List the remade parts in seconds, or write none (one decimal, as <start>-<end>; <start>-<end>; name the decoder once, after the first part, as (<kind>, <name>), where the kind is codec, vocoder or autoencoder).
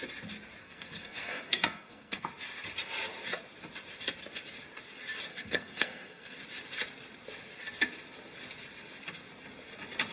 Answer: 0.6-2.3 (codec, SNAC); 5.3-6.4